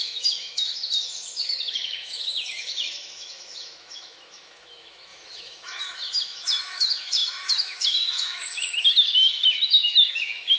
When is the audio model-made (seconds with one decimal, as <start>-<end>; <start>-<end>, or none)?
0.0-10.6